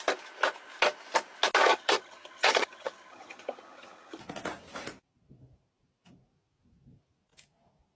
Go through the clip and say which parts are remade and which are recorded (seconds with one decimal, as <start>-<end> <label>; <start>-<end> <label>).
0.0-1.7 recorded; 1.7-4.2 remade; 4.2-8.0 recorded

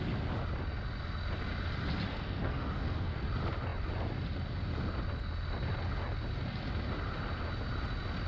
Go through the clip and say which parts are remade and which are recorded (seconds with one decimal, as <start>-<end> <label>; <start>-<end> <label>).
0.0-2.1 recorded; 2.1-3.3 remade; 3.3-8.3 recorded